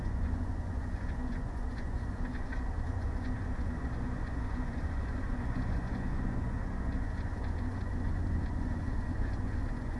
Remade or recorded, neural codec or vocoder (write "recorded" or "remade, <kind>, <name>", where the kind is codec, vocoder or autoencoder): remade, vocoder, Vocos